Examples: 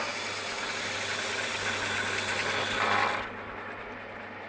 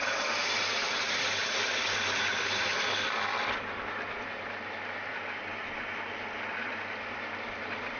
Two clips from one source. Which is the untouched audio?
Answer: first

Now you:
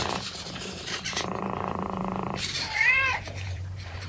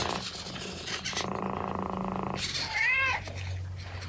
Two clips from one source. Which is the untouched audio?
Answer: second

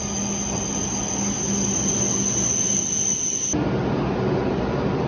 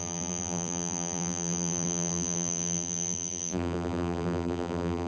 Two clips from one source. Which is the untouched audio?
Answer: first